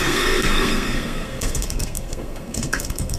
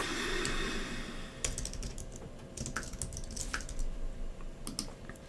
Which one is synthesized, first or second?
first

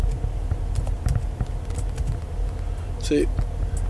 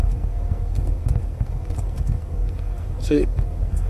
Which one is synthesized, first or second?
second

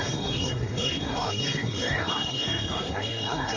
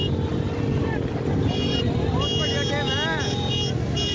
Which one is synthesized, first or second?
first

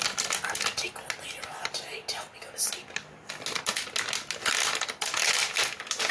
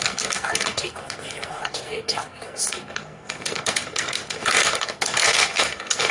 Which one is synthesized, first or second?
second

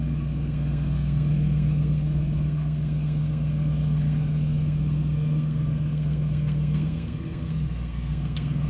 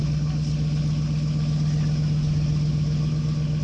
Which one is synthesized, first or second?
first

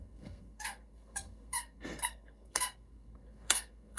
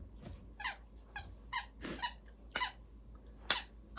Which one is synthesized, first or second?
first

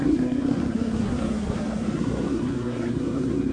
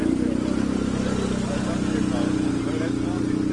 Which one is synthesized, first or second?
first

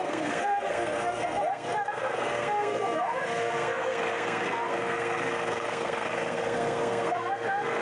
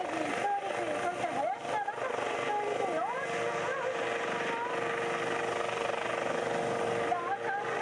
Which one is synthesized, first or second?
first